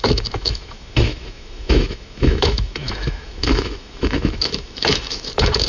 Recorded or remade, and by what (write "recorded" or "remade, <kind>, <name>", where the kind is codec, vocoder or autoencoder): remade, autoencoder, DAC-VAE